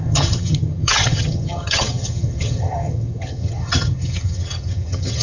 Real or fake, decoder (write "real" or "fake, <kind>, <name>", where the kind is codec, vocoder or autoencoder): fake, vocoder, HiFi-GAN